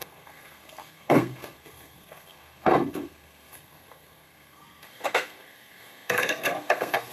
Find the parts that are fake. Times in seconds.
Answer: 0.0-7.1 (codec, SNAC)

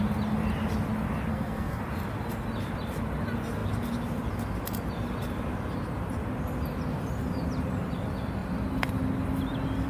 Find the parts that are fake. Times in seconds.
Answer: 1.3-1.8 (codec, SNAC)

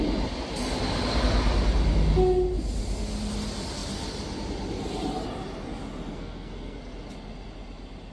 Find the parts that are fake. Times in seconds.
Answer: 6.1-6.8 (codec, SNAC)

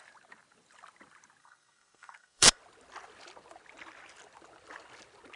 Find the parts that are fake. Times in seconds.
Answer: 1.4-2.6 (codec, SNAC)

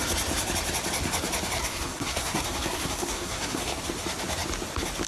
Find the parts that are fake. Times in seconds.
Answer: 1.6-3.8 (codec, SNAC)

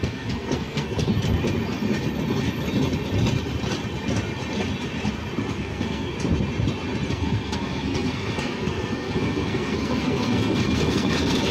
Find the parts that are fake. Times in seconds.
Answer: 0.0-1.1 (codec, SNAC); 5.5-6.1; 7.1-11.5

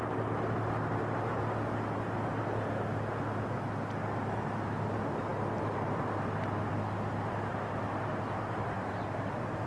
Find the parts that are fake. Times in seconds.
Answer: none